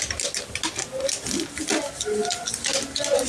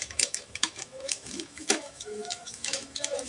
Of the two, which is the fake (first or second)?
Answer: second